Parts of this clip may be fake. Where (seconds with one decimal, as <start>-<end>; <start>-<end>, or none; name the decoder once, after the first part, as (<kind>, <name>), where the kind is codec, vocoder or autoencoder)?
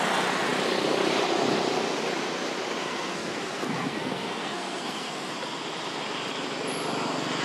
2.8-5.3 (codec, SNAC)